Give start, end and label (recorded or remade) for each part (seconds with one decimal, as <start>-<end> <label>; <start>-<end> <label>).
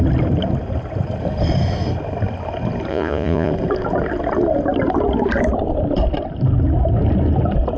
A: 0.0-2.9 recorded; 2.9-3.5 remade; 3.5-7.8 recorded